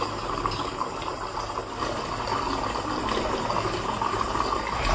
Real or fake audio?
real